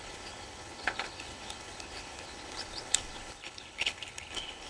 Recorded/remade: remade